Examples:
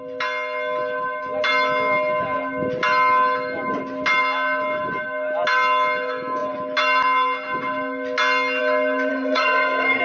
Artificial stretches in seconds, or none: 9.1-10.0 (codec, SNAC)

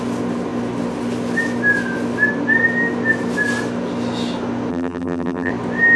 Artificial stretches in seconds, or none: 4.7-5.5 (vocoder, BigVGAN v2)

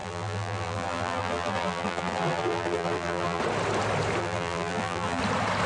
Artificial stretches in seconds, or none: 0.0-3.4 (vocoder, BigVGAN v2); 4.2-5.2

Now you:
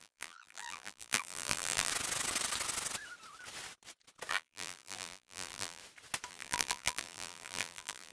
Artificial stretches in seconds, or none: 0.0-1.9 (vocoder, BigVGAN v2); 4.3-5.8; 6.3-8.1

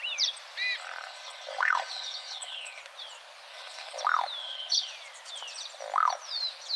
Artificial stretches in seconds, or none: 0.8-2.8 (codec, HILCodec); 3.5-4.0; 4.4-4.9